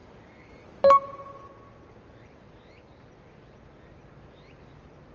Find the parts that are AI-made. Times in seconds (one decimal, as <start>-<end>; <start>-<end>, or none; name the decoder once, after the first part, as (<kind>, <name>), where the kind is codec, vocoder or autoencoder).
none